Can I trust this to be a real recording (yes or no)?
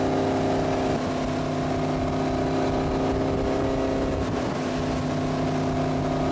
yes